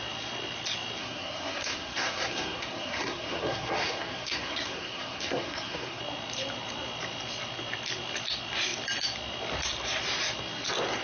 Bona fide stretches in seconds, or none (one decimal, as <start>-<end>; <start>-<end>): 0.0-1.0; 6.0-11.0